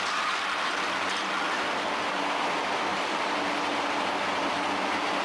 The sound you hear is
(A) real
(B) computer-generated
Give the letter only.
A